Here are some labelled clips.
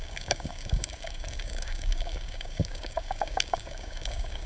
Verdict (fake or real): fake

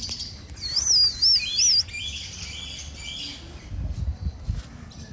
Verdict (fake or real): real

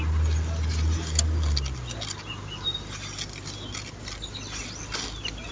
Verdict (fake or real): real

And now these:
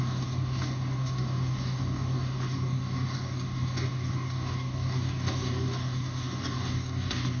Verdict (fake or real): fake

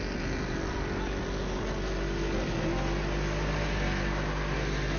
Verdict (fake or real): real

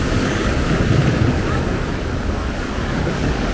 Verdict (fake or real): fake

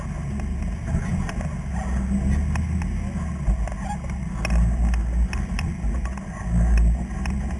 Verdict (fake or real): real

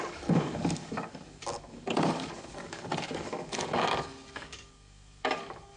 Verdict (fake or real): fake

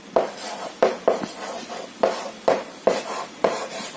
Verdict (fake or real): real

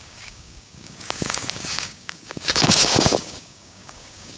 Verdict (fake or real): fake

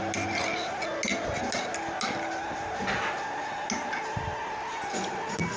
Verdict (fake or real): real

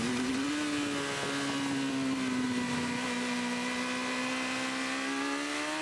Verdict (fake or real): real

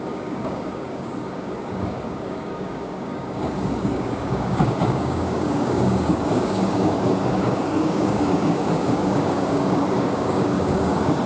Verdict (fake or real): fake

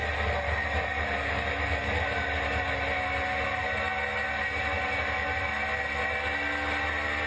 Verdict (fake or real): real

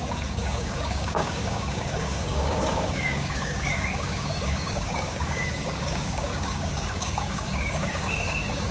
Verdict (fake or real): fake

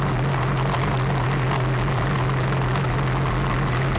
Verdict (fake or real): real